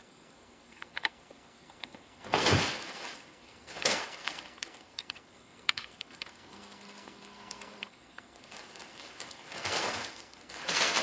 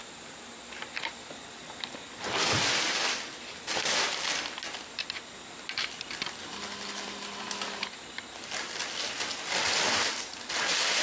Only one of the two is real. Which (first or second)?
second